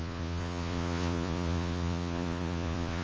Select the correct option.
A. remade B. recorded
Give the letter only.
A